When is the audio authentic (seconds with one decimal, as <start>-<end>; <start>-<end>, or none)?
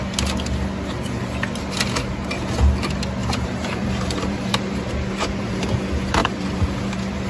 0.0-3.2; 5.7-6.2